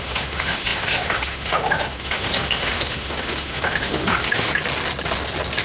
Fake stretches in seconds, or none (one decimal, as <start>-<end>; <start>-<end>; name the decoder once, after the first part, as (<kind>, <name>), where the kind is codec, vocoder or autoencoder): 0.0-4.5 (autoencoder, DAC-VAE)